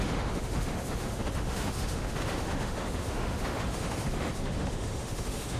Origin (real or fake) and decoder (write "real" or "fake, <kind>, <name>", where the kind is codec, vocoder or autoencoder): fake, autoencoder, DAC-VAE